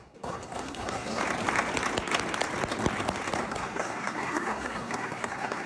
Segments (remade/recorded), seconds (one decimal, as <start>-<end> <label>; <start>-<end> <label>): 0.0-1.2 remade; 1.2-3.5 recorded; 3.5-5.7 remade